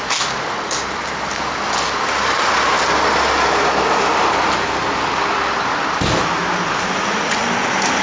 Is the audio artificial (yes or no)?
no